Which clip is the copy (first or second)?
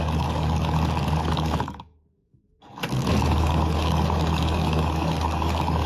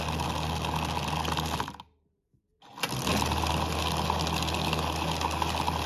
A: first